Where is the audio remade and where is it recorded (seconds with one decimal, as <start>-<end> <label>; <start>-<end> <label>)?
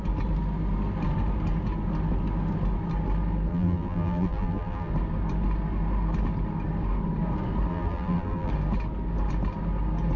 0.0-3.5 recorded; 3.5-4.9 remade; 4.9-7.7 recorded; 7.7-8.5 remade; 8.5-10.2 recorded